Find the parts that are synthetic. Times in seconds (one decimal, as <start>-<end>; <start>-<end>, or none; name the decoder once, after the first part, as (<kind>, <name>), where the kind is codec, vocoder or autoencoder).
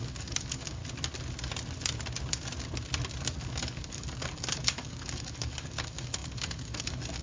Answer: 0.0-0.8 (codec, DAC); 3.2-7.2